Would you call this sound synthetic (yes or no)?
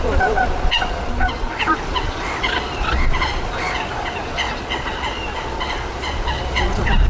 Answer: yes